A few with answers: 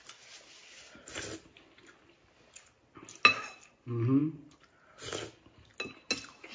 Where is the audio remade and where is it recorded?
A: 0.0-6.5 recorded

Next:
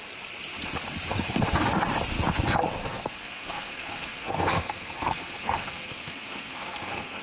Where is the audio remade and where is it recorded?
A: 0.0-2.8 recorded; 2.8-7.2 remade

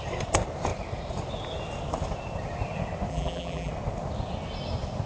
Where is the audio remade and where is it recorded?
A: 0.0-3.1 recorded; 3.1-3.7 remade; 3.7-5.1 recorded

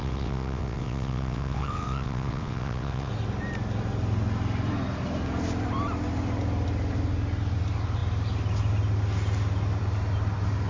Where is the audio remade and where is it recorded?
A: 0.0-3.1 remade; 3.1-10.7 recorded

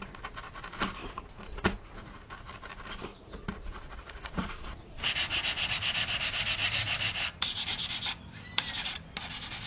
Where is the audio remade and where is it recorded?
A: 0.0-1.0 recorded; 1.0-1.9 remade; 1.9-3.1 recorded; 3.1-4.9 remade; 4.9-9.7 recorded

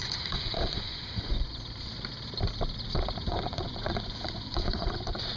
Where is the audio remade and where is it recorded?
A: 0.0-1.5 remade; 1.5-3.2 recorded; 3.2-5.0 remade; 5.0-5.4 recorded

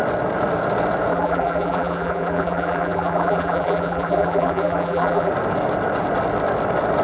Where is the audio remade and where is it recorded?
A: 0.0-1.1 recorded; 1.1-5.3 remade; 5.3-7.0 recorded

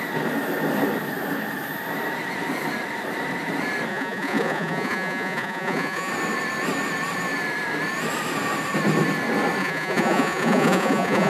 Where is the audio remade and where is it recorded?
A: 0.0-3.9 recorded; 3.9-6.1 remade; 6.1-9.6 recorded; 9.6-11.3 remade